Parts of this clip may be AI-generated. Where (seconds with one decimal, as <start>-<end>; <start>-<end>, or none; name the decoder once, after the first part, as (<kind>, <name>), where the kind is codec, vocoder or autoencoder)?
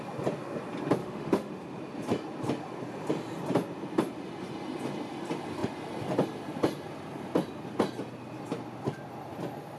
1.0-1.5 (autoencoder, DAC-VAE)